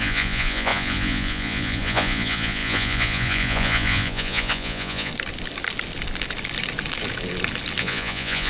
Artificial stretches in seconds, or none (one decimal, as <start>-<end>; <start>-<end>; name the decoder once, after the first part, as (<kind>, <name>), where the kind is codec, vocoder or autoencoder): 0.0-5.1 (vocoder, Vocos); 7.8-8.5